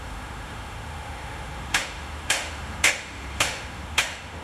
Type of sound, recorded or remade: remade